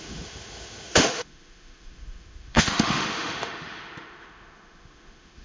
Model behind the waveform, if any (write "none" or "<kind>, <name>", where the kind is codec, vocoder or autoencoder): autoencoder, DAC-VAE